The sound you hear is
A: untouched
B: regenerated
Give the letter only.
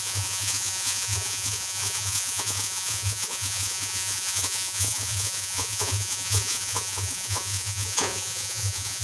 B